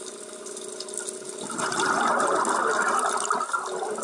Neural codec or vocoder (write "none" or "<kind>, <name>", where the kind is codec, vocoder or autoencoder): none